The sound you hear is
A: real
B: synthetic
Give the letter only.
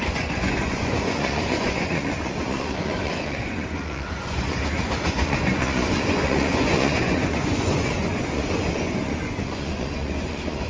B